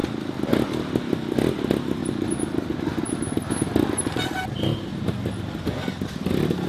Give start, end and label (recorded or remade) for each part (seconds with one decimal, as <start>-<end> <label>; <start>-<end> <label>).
0.0-4.9 recorded; 4.9-5.4 remade; 5.4-6.7 recorded

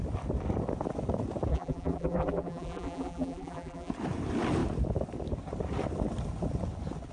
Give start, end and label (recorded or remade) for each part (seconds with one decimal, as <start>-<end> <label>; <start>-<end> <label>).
0.0-1.5 recorded; 1.5-3.9 remade; 3.9-7.1 recorded

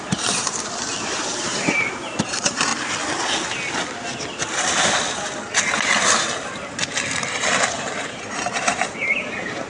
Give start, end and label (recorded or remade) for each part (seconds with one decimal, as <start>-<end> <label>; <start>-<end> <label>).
0.0-2.7 remade; 2.7-7.7 recorded; 7.7-9.7 remade

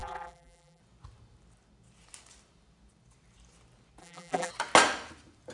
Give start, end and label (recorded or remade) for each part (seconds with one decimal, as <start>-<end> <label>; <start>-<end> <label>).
0.0-0.8 remade; 0.8-4.0 recorded; 4.0-4.5 remade; 4.5-5.5 recorded

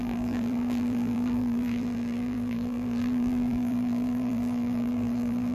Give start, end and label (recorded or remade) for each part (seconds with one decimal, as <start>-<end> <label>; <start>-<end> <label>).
0.0-5.5 remade

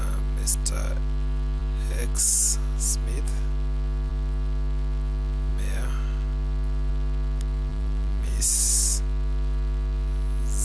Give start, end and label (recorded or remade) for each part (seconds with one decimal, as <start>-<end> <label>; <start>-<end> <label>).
0.0-7.7 recorded; 7.7-8.5 remade; 8.5-10.6 recorded

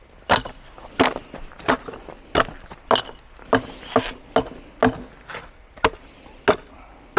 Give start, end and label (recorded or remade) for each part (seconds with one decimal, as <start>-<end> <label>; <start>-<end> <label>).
0.0-7.2 recorded